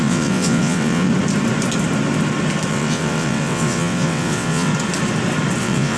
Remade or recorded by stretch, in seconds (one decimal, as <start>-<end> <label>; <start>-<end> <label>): 0.0-1.1 remade; 1.1-2.7 recorded; 2.7-4.7 remade; 4.7-5.6 recorded; 5.6-6.0 remade